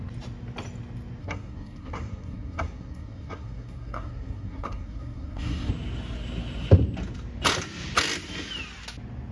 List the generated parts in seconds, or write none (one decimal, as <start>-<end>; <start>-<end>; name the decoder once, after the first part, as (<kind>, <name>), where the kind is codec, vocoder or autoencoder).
1.2-5.7 (codec, SNAC)